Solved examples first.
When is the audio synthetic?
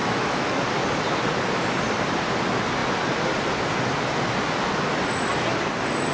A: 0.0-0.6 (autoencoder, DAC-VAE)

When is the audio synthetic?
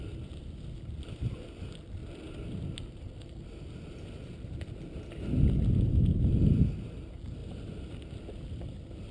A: none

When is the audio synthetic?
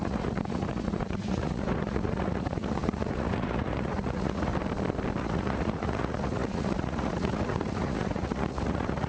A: 0.0-4.5 (vocoder, Vocos); 5.2-9.1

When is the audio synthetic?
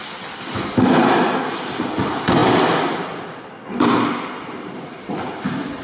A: none